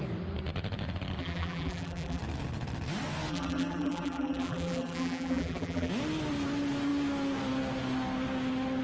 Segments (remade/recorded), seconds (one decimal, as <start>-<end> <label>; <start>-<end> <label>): 0.0-1.2 recorded; 1.2-2.2 remade; 2.2-3.3 recorded; 3.3-5.9 remade; 5.9-8.8 recorded